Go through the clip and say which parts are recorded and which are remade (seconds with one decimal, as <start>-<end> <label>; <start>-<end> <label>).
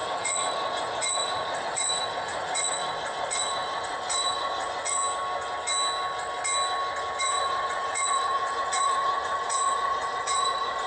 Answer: 0.0-5.0 remade; 5.0-7.2 recorded; 7.2-10.9 remade